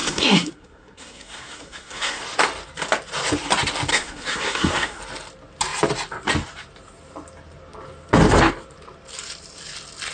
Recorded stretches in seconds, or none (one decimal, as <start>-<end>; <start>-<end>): 2.2-3.9; 5.0-10.1